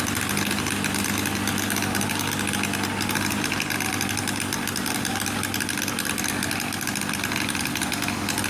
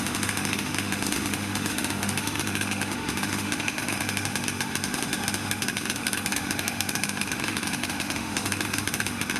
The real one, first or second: first